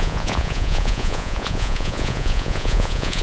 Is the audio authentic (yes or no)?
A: no